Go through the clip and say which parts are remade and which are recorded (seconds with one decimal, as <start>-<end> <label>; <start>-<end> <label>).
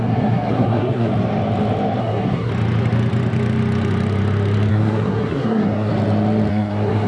0.0-1.1 remade; 1.1-2.0 recorded; 2.0-2.5 remade; 2.5-4.7 recorded; 4.7-5.9 remade; 5.9-6.5 recorded; 6.5-7.1 remade